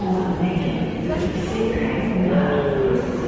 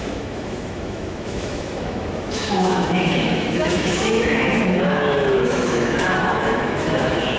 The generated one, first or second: second